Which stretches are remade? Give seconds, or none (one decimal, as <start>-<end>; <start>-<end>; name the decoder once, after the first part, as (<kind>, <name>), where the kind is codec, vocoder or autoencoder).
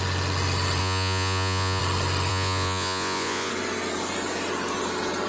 0.8-1.8 (vocoder, Vocos); 2.3-3.5